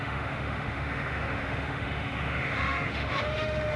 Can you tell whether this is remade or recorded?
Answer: remade